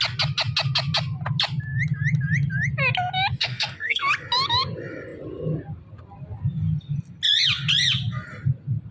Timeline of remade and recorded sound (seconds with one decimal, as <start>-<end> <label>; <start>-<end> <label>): 0.0-3.4 recorded; 3.4-4.1 remade; 4.1-8.9 recorded